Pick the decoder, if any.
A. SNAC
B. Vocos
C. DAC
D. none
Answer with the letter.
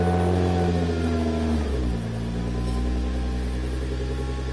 D